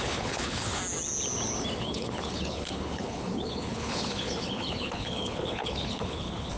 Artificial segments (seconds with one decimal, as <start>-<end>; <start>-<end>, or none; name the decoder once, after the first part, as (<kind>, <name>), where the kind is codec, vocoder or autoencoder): 0.0-0.8 (codec, HILCodec); 1.8-6.6

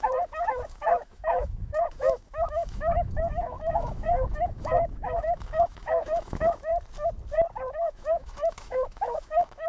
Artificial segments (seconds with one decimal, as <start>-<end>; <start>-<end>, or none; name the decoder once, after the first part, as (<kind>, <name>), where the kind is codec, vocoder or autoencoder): 0.0-6.7 (autoencoder, DAC-VAE); 7.7-9.7

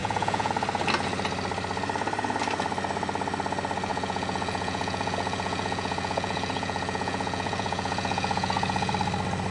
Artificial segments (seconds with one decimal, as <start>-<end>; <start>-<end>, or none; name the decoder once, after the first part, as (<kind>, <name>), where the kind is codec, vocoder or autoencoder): 0.0-0.5 (vocoder, Vocos); 3.9-8.9